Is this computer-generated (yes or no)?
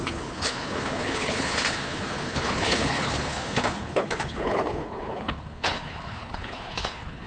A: yes